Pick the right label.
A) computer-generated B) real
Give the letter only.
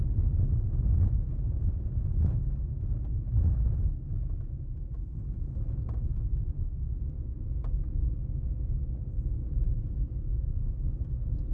B